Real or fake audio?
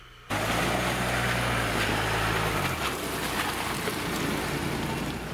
real